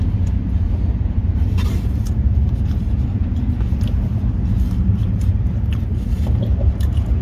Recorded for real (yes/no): no